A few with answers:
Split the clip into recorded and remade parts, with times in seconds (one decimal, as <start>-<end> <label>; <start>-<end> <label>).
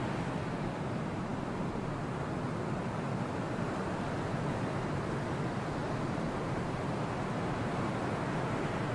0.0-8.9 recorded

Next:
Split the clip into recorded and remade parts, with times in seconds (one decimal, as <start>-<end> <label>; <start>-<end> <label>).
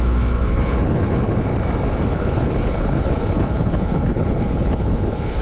0.0-1.5 remade; 1.5-2.1 recorded; 2.1-5.4 remade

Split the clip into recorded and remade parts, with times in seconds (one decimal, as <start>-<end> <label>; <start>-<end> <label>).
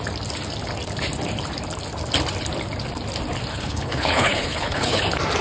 0.0-3.5 recorded; 3.5-5.0 remade; 5.0-5.4 recorded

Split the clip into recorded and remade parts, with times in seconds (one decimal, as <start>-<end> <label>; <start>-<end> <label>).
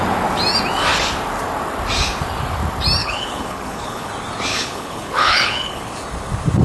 0.0-3.0 recorded; 3.0-4.1 remade; 4.1-4.5 recorded; 4.5-5.9 remade; 5.9-6.6 recorded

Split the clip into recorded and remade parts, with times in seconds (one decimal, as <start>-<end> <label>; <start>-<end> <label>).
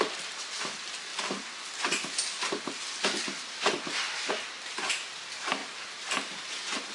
0.0-6.9 recorded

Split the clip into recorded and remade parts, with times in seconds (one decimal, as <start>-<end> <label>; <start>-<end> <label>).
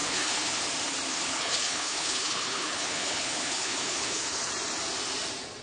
0.0-0.6 remade; 0.6-1.1 recorded; 1.1-4.5 remade; 4.5-5.6 recorded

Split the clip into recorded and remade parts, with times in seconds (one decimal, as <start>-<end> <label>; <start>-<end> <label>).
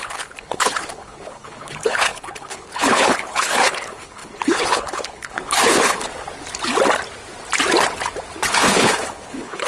0.0-6.1 remade; 6.1-8.5 recorded; 8.5-9.7 remade